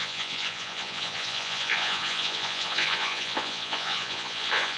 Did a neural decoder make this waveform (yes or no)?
yes